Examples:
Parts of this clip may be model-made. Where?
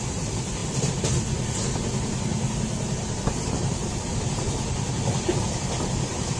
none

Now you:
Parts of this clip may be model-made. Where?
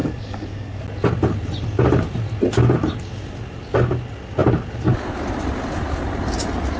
0.0-0.8 (codec, DAC)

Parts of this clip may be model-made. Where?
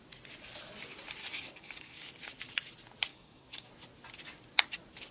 1.2-2.1 (codec, DAC); 3.1-3.7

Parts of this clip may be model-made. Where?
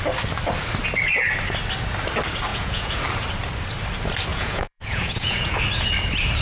2.5-3.0 (vocoder, Vocos); 4.3-5.6